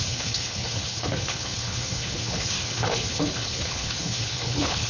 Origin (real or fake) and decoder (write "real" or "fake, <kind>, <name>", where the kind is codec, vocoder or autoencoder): fake, codec, HILCodec